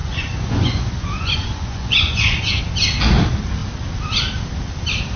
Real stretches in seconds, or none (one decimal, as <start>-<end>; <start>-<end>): 2.6-5.2